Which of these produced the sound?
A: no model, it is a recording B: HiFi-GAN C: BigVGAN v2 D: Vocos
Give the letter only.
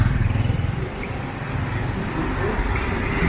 C